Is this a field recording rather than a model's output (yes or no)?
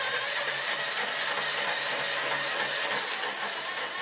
yes